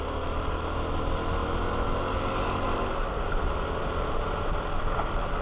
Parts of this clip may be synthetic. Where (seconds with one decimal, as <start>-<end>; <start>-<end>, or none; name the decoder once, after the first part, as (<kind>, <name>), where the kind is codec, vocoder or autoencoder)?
none